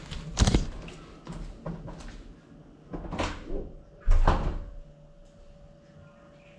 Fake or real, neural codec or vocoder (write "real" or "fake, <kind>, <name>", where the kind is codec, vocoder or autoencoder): real